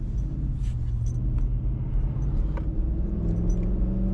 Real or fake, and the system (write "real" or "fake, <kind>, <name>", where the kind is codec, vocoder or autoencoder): real